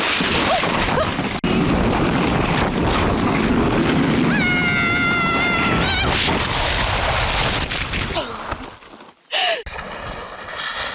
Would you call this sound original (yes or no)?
yes